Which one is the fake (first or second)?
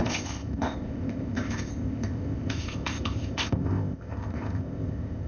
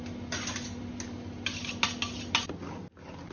first